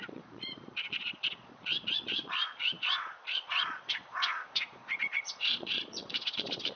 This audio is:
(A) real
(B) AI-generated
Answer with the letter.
B